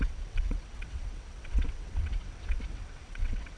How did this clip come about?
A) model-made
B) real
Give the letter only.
A